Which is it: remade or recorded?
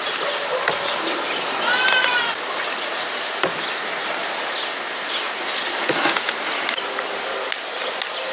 recorded